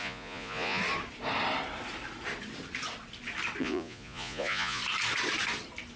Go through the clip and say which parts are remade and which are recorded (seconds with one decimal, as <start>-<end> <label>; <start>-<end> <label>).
0.0-0.8 remade; 0.8-3.6 recorded; 3.6-4.8 remade; 4.8-6.0 recorded